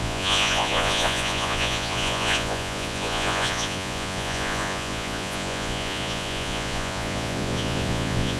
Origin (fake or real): fake